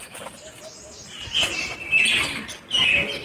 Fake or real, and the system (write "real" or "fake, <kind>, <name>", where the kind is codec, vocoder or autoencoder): real